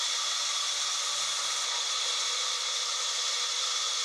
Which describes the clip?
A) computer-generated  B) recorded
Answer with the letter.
B